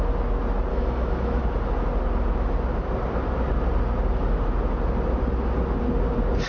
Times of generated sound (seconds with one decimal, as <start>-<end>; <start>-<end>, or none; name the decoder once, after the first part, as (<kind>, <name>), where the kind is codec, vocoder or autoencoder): 0.7-1.4 (autoencoder, DAC-VAE)